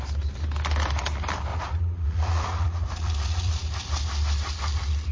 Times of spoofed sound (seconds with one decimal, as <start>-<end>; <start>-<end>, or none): 1.5-3.6